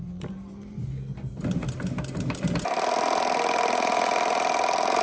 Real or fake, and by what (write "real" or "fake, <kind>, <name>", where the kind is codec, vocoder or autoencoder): real